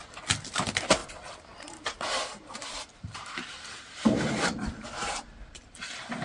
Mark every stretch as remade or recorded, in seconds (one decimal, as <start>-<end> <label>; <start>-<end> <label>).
0.0-1.0 recorded; 1.0-4.7 remade; 4.7-6.2 recorded